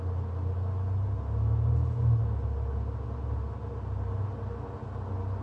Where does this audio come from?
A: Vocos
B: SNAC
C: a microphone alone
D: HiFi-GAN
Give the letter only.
C